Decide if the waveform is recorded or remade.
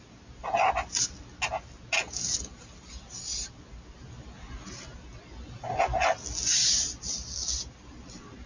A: recorded